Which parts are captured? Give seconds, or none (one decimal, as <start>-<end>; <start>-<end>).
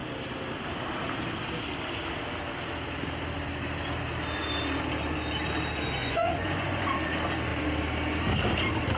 0.0-6.0; 6.9-9.0